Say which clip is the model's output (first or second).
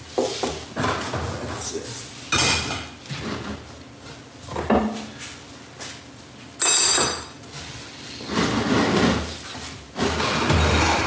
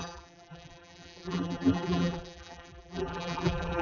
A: second